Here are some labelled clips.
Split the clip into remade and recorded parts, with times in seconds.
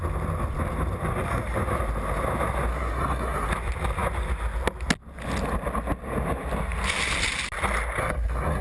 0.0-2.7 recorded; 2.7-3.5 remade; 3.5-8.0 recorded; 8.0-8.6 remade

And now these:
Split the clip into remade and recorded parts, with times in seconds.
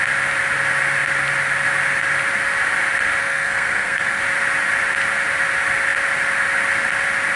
0.0-3.2 recorded; 3.2-4.2 remade; 4.2-7.4 recorded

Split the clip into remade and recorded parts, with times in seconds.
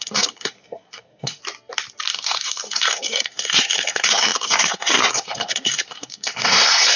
0.0-1.4 remade; 1.4-2.1 recorded; 2.1-7.0 remade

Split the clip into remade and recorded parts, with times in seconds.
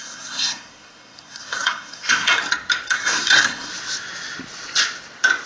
0.0-2.3 remade; 2.3-2.9 recorded; 2.9-3.7 remade; 3.7-5.5 recorded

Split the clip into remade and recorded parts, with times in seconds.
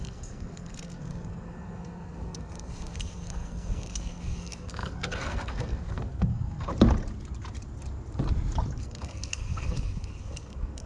0.0-6.7 remade; 6.7-8.8 recorded; 8.8-10.9 remade